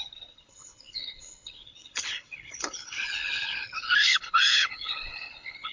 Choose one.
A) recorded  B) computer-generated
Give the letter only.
B